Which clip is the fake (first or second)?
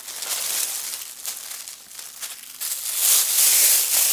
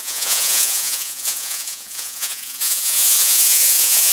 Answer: second